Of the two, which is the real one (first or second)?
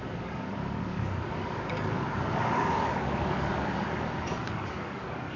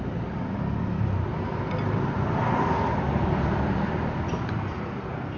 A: second